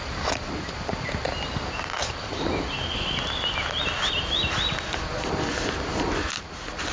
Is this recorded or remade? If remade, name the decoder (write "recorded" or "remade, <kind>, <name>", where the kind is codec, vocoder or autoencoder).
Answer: recorded